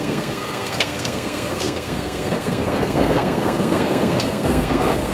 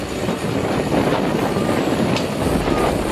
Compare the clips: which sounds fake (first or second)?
first